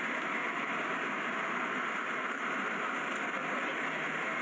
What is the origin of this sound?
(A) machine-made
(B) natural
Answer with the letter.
B